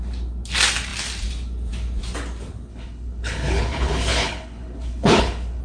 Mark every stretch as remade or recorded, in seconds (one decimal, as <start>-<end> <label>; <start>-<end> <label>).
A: 0.0-2.7 recorded; 2.7-5.6 remade

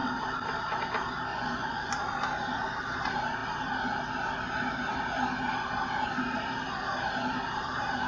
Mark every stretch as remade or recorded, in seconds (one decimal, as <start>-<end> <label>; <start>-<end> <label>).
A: 0.0-1.3 recorded; 1.3-1.9 remade; 1.9-8.1 recorded

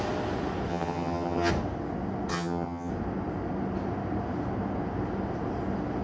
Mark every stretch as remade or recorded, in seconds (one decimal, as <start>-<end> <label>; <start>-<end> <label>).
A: 0.0-0.7 recorded; 0.7-1.5 remade; 1.5-2.3 recorded; 2.3-2.9 remade; 2.9-6.0 recorded

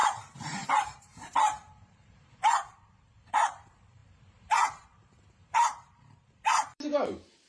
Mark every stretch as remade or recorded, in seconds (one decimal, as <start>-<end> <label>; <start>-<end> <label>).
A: 0.0-7.5 remade

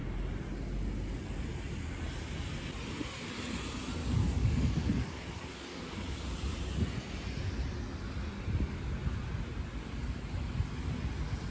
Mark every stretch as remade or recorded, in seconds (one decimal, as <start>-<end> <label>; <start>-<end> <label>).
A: 0.0-4.0 recorded; 4.0-6.2 remade; 6.2-11.5 recorded

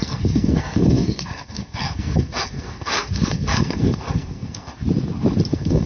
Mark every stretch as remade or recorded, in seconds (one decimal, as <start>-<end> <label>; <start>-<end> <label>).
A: 0.0-4.7 remade; 4.7-5.5 recorded; 5.5-5.9 remade